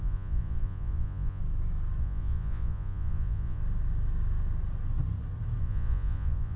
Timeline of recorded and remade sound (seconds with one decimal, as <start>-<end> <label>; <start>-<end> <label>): 0.0-1.4 remade; 1.4-2.0 recorded; 2.0-3.6 remade; 3.6-5.6 recorded; 5.6-6.6 remade